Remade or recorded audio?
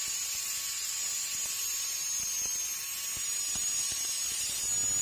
recorded